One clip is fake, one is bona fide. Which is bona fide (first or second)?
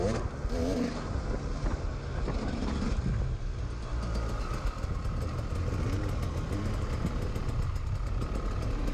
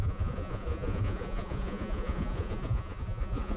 first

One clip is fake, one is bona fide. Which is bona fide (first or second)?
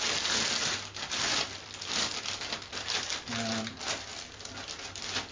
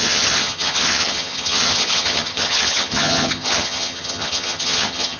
first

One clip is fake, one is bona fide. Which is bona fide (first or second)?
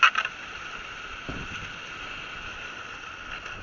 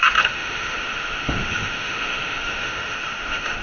first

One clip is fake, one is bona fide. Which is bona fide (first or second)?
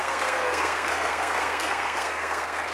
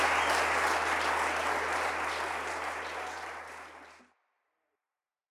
second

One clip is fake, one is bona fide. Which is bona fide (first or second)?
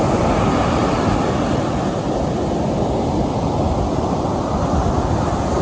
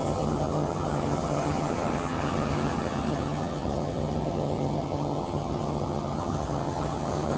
first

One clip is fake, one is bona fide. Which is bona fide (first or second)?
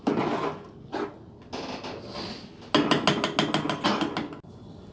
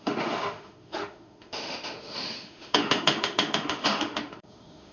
first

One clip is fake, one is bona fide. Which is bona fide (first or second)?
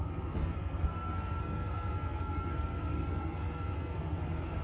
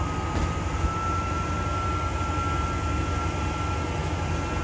second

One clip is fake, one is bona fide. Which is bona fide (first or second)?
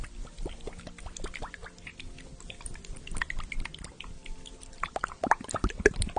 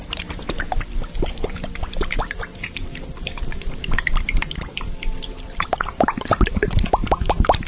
first